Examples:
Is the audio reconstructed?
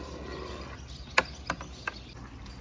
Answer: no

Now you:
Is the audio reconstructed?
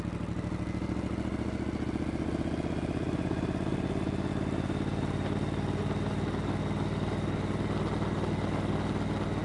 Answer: no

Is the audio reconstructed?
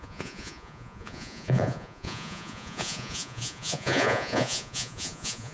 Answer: yes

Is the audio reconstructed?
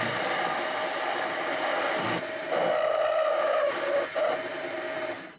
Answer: no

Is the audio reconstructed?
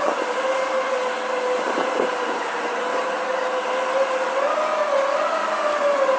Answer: no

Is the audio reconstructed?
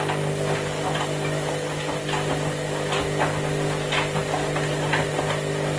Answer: no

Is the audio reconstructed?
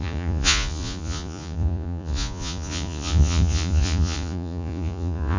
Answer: yes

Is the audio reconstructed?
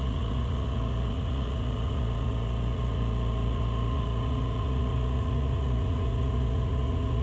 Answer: yes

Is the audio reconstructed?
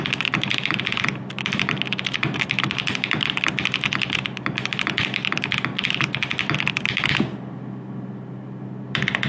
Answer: no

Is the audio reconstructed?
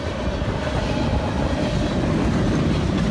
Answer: no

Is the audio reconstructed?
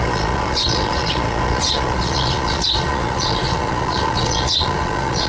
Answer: yes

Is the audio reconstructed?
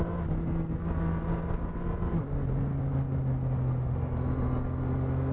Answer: no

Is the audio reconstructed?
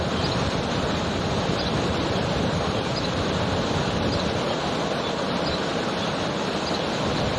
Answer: no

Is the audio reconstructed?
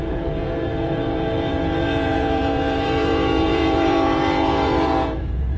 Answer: yes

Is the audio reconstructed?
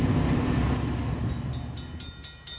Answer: no